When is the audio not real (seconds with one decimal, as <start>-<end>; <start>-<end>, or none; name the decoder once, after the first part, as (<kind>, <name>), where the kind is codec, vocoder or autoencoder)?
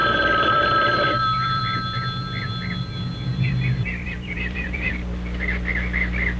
0.0-1.6 (vocoder, BigVGAN v2); 3.3-4.9